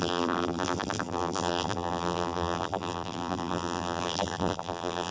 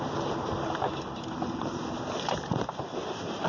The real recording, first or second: second